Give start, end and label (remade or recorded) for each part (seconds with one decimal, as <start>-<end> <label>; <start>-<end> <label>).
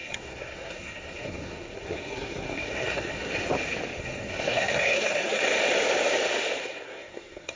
0.0-3.3 remade; 3.3-4.0 recorded; 4.0-5.4 remade; 5.4-6.6 recorded; 6.6-7.6 remade